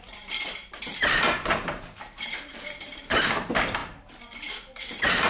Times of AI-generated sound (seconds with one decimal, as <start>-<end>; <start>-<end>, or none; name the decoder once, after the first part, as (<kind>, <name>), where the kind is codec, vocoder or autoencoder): 0.0-3.8 (vocoder, BigVGAN v2); 4.8-5.3

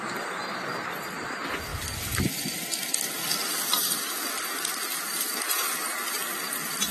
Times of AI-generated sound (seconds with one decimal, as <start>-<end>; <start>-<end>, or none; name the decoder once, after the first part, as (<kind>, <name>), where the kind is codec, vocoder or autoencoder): none

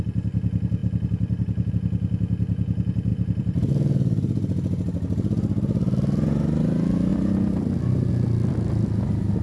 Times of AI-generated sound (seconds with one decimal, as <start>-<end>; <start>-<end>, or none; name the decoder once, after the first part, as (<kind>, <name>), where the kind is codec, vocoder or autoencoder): 0.8-1.7 (vocoder, BigVGAN v2); 3.1-3.7

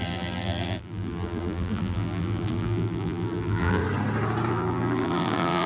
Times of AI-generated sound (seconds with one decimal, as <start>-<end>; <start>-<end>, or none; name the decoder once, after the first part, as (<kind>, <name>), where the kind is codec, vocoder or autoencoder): 0.0-3.8 (vocoder, BigVGAN v2); 4.5-5.7

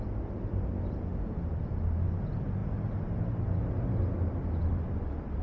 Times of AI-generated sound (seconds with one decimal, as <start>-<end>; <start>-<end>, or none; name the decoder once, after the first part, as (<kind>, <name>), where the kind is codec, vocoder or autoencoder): 4.6-5.4 (vocoder, BigVGAN v2)

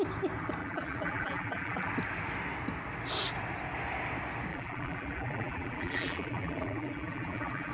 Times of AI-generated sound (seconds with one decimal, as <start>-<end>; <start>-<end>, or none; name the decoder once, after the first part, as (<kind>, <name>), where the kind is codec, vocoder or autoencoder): 0.6-1.9 (vocoder, BigVGAN v2); 4.5-7.7

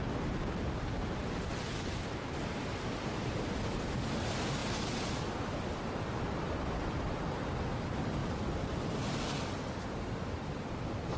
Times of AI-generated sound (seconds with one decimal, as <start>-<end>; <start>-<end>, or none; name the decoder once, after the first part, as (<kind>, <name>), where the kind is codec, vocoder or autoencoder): 0.0-4.6 (vocoder, BigVGAN v2); 5.2-8.2; 10.0-11.2